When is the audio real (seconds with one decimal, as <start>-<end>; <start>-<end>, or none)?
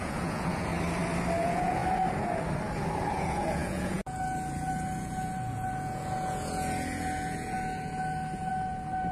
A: 0.7-1.4; 1.8-3.1